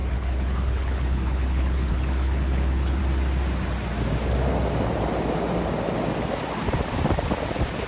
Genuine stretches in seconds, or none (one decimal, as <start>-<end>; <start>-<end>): 3.0-7.9

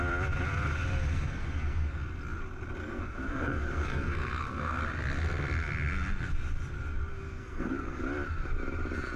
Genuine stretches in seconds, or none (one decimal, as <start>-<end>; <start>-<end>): 0.0-1.1; 2.0-2.8; 4.8-7.1; 8.0-9.2

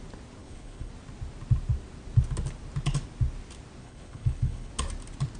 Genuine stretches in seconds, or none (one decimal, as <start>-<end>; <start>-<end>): 0.0-0.4; 0.9-3.8; 4.7-5.4

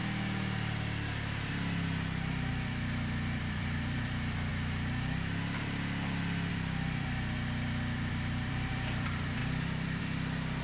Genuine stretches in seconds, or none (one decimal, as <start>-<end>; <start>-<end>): 0.0-2.5; 4.5-6.5

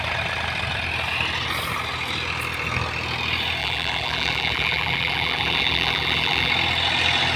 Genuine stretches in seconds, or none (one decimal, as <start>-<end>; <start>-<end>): 0.0-3.6; 6.5-7.4

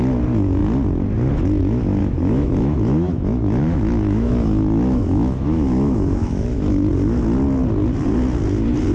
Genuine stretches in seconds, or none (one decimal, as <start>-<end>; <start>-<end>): 0.0-2.0; 6.9-8.9

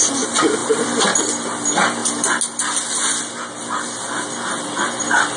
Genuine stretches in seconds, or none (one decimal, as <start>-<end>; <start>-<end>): 0.0-5.4